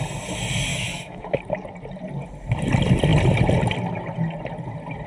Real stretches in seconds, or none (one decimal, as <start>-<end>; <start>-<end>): 0.0-0.7; 1.4-5.1

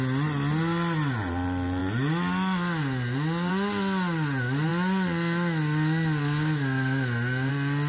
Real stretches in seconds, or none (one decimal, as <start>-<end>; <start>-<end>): 0.0-7.9

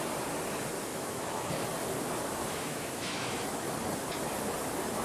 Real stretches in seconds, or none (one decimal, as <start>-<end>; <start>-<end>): 0.0-0.9; 1.5-2.4; 3.7-5.0